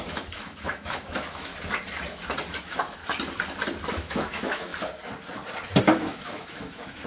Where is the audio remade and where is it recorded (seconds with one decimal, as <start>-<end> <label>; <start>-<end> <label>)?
0.0-1.5 remade; 1.5-2.6 recorded; 2.6-3.0 remade; 3.0-3.9 recorded; 3.9-4.7 remade; 4.7-5.8 recorded; 5.8-7.1 remade